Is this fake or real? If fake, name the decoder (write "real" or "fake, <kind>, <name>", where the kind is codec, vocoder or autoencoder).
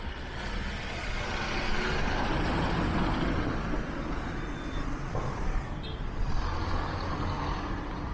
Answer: real